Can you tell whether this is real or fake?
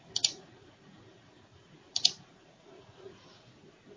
fake